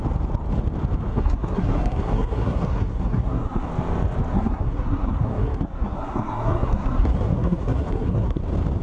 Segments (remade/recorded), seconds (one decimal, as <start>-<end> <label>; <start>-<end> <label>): 0.0-1.1 recorded; 1.1-3.7 remade; 3.7-4.3 recorded; 4.3-8.4 remade; 8.4-8.8 recorded